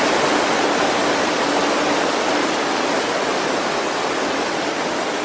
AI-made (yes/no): no